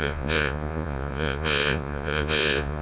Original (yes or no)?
no